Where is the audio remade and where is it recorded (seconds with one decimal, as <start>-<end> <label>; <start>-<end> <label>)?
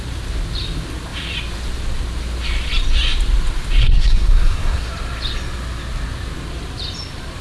0.0-3.8 recorded; 3.8-4.9 remade; 4.9-7.4 recorded